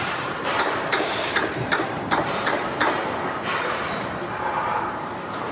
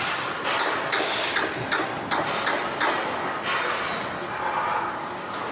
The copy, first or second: first